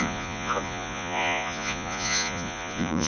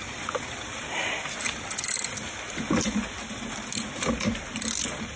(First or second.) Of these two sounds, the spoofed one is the first